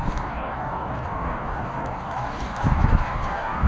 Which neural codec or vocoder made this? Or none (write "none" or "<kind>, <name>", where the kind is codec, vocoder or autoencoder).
codec, DAC